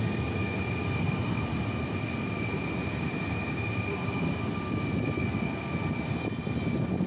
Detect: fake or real real